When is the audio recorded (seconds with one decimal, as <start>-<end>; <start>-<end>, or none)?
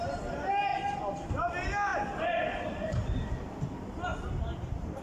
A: 0.0-0.7; 1.3-1.9; 2.9-4.1